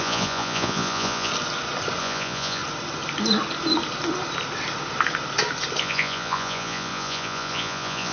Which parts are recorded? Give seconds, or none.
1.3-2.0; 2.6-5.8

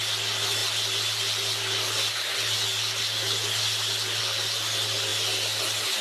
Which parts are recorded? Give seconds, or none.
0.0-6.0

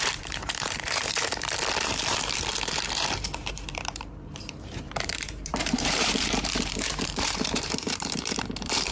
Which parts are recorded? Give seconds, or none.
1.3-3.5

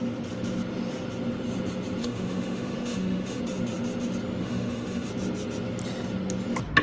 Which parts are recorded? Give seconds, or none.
0.0-2.0; 3.4-4.4; 5.1-6.8

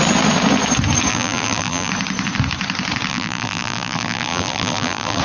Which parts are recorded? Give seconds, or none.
0.0-1.1; 1.9-3.1

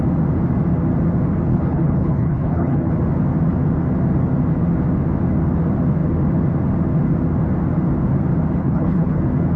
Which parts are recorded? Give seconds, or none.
0.0-1.5; 2.9-8.6; 9.2-9.6

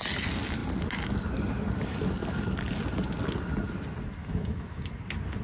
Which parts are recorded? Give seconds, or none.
0.0-4.2; 4.9-5.4

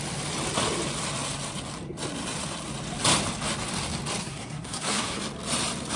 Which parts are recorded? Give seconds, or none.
0.0-4.2; 5.2-6.0